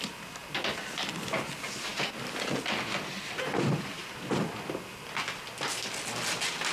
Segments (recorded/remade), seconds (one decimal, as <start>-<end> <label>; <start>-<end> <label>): 0.0-6.7 recorded